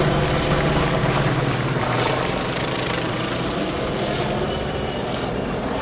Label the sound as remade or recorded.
remade